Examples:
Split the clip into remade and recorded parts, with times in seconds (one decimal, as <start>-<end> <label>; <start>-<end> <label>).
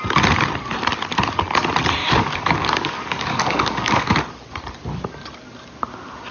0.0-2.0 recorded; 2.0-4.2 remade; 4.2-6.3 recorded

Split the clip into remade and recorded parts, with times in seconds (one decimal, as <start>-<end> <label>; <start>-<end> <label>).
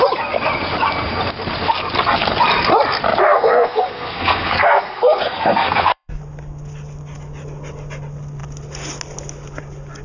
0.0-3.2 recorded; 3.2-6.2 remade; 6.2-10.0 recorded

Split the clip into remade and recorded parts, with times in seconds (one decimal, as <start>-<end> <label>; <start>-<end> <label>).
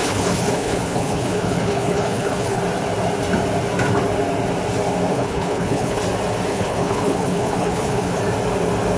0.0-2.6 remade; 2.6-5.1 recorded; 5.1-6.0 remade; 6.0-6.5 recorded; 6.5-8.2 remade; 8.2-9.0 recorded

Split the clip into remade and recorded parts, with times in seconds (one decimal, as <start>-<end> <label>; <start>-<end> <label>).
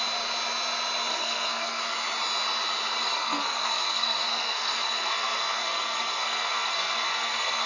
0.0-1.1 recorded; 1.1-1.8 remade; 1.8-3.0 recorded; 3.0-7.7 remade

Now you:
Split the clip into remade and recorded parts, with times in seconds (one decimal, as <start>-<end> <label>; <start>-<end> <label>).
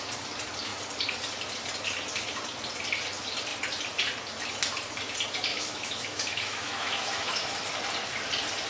0.0-5.5 recorded; 5.5-7.7 remade; 7.7-8.7 recorded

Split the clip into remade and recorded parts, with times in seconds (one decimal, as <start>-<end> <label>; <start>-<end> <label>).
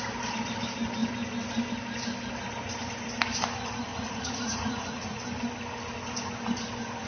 0.0-3.9 recorded; 3.9-5.2 remade; 5.2-7.1 recorded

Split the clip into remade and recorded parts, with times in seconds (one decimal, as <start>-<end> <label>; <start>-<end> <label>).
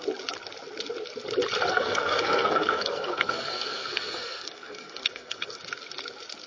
0.0-1.7 recorded; 1.7-5.6 remade; 5.6-6.5 recorded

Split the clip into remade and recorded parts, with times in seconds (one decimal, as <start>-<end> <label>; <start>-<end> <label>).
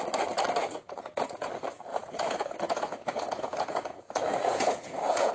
0.0-0.6 recorded; 0.6-1.5 remade; 1.5-1.9 recorded; 1.9-5.3 remade